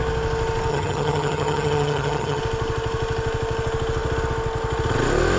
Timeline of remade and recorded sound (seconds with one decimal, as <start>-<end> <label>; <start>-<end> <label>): 0.0-0.7 recorded; 0.7-2.4 remade; 2.4-5.4 recorded